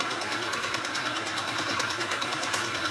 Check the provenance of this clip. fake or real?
fake